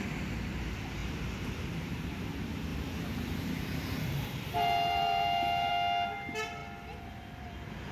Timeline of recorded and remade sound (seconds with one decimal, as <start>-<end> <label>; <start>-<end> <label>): 0.0-1.0 recorded; 1.0-2.2 remade; 2.2-2.7 recorded; 2.7-5.7 remade; 5.7-7.9 recorded